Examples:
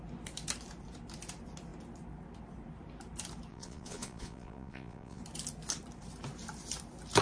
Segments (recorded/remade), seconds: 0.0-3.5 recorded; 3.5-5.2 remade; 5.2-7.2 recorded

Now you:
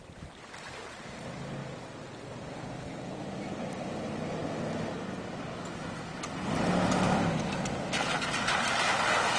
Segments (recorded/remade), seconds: 0.0-9.4 recorded